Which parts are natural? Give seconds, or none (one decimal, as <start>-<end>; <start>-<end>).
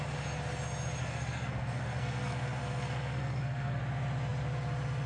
0.0-1.0; 3.8-5.1